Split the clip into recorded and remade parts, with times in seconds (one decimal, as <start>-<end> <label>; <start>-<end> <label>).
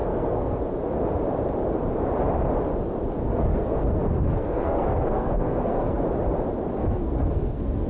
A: 0.0-0.6 remade; 0.6-3.2 recorded; 3.2-6.0 remade; 6.0-6.8 recorded; 6.8-7.9 remade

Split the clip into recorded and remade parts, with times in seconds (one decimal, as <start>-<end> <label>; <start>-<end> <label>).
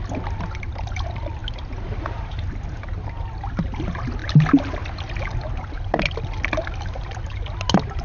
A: 0.0-8.0 recorded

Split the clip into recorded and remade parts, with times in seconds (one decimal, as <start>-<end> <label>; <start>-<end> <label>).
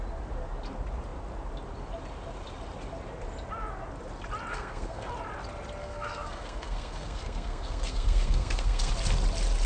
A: 0.0-4.5 recorded; 4.5-5.1 remade; 5.1-5.8 recorded; 5.8-8.9 remade; 8.9-9.7 recorded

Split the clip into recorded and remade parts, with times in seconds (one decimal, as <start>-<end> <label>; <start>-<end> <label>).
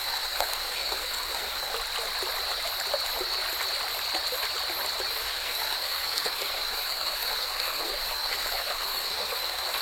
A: 0.0-1.7 remade; 1.7-5.1 recorded; 5.1-9.8 remade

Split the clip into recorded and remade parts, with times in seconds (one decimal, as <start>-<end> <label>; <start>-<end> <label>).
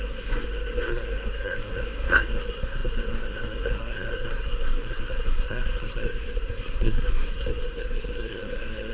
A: 0.0-8.9 remade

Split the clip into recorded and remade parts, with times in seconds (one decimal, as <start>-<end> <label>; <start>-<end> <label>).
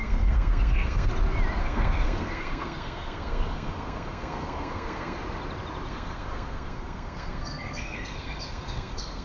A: 0.0-1.1 remade; 1.1-1.6 recorded; 1.6-5.2 remade; 5.2-5.9 recorded; 5.9-9.2 remade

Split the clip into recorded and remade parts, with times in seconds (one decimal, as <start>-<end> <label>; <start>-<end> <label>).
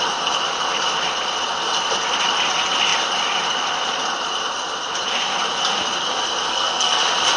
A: 0.0-6.5 recorded; 6.5-7.0 remade; 7.0-7.4 recorded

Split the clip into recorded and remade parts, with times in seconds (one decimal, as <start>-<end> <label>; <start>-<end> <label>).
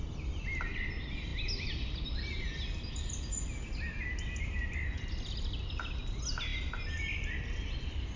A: 0.0-8.2 recorded